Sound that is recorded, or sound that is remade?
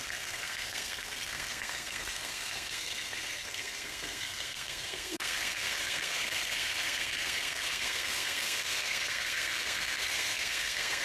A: remade